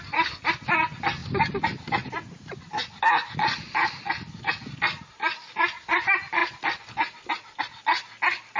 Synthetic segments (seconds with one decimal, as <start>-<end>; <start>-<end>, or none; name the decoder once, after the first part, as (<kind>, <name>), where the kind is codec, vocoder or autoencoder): none